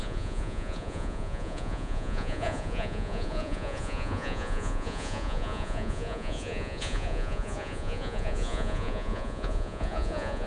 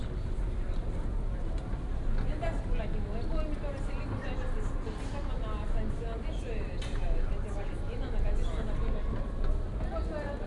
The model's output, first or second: first